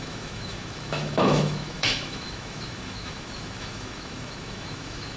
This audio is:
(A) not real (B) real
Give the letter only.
A